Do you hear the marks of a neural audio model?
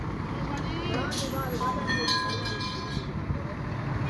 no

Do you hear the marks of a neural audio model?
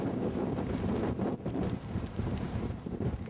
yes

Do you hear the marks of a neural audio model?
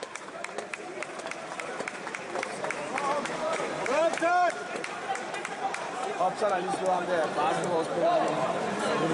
yes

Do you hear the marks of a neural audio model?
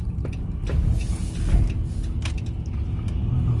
no